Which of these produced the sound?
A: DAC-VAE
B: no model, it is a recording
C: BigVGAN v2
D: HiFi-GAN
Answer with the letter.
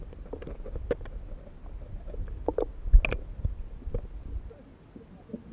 B